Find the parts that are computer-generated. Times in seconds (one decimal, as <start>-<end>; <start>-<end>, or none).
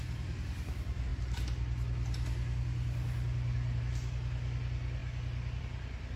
none